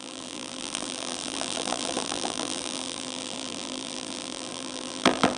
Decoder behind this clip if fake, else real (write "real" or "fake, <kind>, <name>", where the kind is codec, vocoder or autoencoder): fake, vocoder, BigVGAN v2